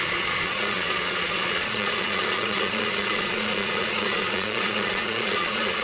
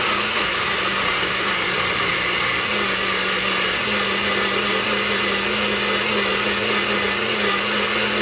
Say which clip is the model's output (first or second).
first